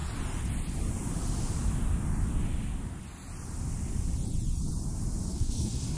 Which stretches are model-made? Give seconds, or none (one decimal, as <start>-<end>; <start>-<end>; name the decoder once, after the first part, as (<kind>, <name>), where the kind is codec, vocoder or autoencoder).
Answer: 5.3-6.0 (codec, SNAC)